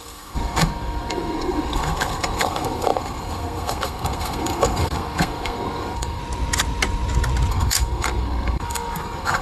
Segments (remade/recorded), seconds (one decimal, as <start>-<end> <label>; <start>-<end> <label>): 0.0-6.2 remade; 6.2-7.5 recorded; 7.5-9.4 remade